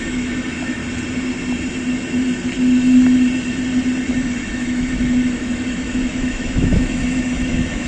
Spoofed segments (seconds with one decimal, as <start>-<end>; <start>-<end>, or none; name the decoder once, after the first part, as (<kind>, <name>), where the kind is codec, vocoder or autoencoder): 0.0-0.8 (autoencoder, DAC-VAE); 4.1-7.9